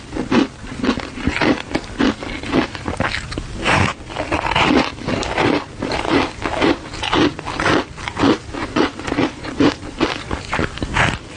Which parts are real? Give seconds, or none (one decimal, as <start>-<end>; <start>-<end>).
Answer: 0.0-8.6; 9.7-11.4